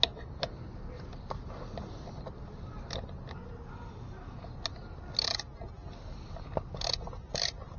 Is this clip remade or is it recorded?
recorded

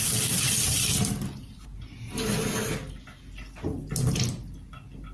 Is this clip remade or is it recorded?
recorded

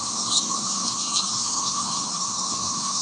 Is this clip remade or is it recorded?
remade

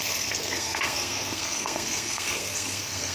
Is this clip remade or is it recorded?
remade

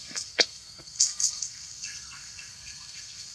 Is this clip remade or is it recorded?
remade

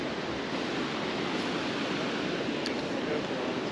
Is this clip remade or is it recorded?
recorded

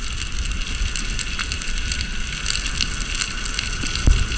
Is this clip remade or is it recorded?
recorded